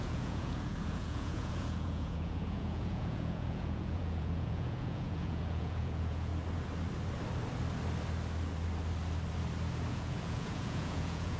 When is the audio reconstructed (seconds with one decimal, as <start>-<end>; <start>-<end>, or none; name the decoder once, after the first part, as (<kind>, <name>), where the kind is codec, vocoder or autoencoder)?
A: 0.0-6.3 (vocoder, Vocos); 9.9-11.4